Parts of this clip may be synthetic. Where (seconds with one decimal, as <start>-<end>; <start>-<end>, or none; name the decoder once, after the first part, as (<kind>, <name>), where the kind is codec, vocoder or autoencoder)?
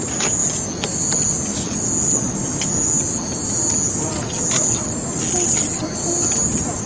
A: none